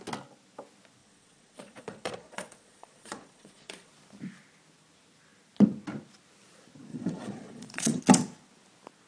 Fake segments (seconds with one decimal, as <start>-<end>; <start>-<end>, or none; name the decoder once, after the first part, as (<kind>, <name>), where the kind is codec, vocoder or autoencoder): 1.0-3.9 (vocoder, Vocos); 6.9-8.0

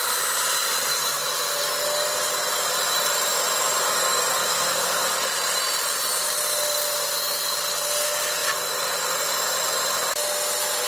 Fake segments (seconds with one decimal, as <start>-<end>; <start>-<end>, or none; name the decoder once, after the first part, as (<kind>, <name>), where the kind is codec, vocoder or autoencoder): 4.4-5.0 (codec, SNAC)

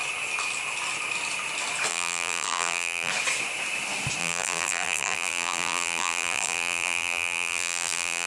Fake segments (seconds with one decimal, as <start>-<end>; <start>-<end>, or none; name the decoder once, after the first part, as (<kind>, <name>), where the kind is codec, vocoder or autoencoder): 1.9-3.1 (vocoder, BigVGAN v2); 4.2-8.3

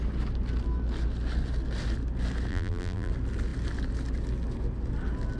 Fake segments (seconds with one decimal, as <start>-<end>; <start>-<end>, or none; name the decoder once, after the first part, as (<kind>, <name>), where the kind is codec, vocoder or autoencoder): 2.5-3.1 (vocoder, BigVGAN v2)